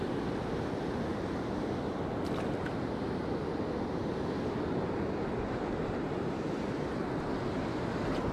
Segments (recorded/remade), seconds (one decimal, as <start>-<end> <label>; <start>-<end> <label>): 0.0-5.7 recorded; 5.7-7.2 remade; 7.2-8.3 recorded